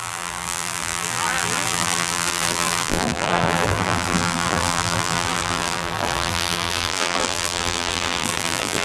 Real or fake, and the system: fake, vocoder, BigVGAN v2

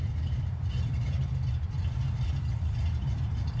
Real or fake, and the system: fake, vocoder, BigVGAN v2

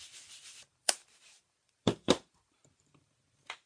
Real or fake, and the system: fake, vocoder, BigVGAN v2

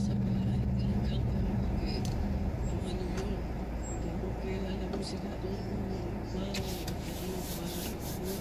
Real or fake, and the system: real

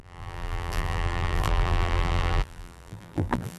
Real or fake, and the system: fake, vocoder, BigVGAN v2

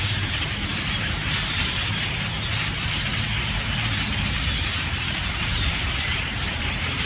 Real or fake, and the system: fake, vocoder, BigVGAN v2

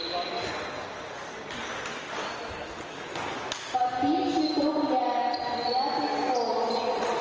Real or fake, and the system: real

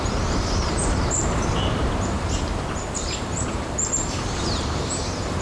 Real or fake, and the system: fake, vocoder, BigVGAN v2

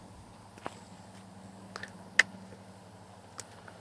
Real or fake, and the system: real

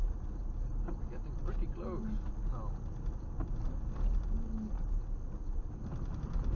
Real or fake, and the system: real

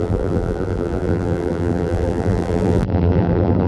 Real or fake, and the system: fake, vocoder, BigVGAN v2